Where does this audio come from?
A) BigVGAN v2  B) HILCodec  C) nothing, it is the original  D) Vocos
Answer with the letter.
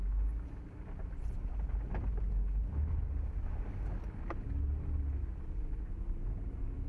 C